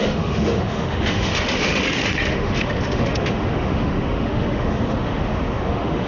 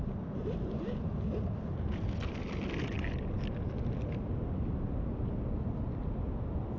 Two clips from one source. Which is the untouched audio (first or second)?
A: second